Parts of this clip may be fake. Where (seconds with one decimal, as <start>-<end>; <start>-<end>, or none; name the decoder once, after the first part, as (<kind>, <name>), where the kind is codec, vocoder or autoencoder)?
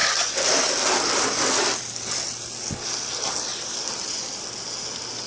0.0-1.8 (vocoder, BigVGAN v2); 3.5-4.2